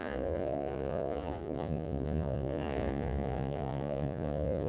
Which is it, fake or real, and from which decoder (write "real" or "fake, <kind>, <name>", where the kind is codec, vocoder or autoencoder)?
fake, vocoder, Vocos